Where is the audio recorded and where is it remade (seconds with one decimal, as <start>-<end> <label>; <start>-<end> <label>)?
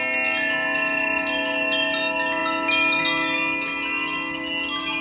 0.0-5.0 recorded